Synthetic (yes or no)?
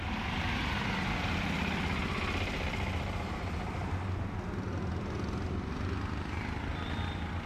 no